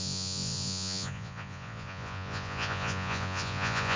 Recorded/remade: remade